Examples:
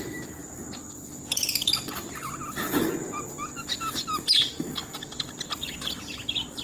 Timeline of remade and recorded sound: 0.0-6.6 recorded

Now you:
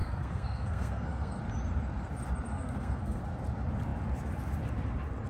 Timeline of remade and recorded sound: 0.0-1.4 remade; 1.4-2.5 recorded; 2.5-3.2 remade; 3.2-5.3 recorded

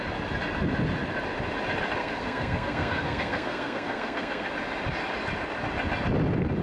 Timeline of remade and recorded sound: 0.0-2.0 recorded; 2.0-4.5 remade; 4.5-6.6 recorded

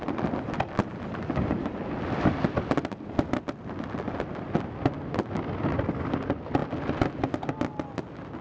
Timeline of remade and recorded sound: 0.0-8.4 recorded

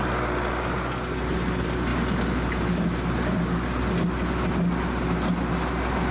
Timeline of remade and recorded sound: 0.0-6.1 recorded

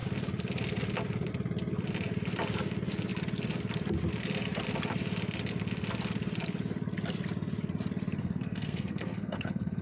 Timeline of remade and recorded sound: 0.0-8.2 recorded; 8.2-9.8 remade